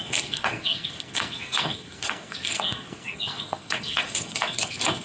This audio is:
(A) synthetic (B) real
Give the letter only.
A